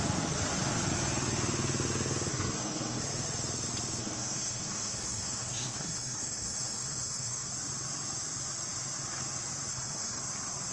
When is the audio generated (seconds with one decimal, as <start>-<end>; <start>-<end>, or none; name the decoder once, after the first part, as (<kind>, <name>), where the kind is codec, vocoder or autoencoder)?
2.3-3.0 (codec, SNAC); 4.0-7.5; 9.7-10.2

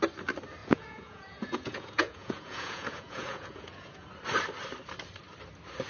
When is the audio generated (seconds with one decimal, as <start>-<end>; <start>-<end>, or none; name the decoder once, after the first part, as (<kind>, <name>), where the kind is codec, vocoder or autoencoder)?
0.6-4.1 (vocoder, Vocos)